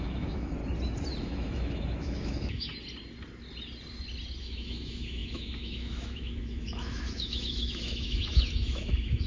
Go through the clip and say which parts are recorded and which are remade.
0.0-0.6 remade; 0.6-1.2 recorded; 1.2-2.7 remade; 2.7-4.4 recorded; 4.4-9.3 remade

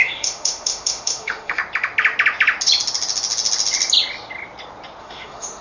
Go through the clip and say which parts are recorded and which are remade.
0.0-1.6 remade; 1.6-5.0 recorded; 5.0-5.6 remade

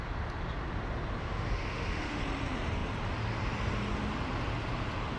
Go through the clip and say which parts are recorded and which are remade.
0.0-1.2 recorded; 1.2-2.2 remade; 2.2-5.2 recorded

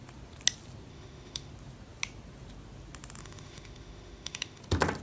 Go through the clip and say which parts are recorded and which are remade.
0.0-0.9 recorded; 0.9-1.5 remade; 1.5-3.2 recorded; 3.2-4.6 remade; 4.6-5.0 recorded

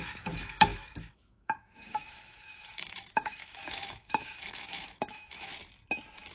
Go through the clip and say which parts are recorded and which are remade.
0.0-5.5 remade; 5.5-6.3 recorded

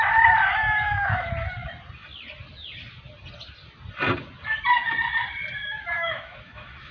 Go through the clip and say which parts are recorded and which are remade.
0.0-0.5 recorded; 0.5-1.3 remade; 1.3-5.6 recorded; 5.6-6.9 remade

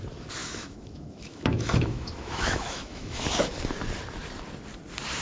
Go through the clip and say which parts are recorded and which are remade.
0.0-0.4 recorded; 0.4-3.5 remade; 3.5-5.2 recorded